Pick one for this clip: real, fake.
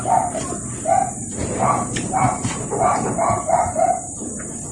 fake